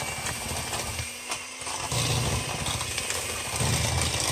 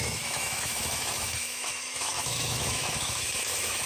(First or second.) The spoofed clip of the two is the second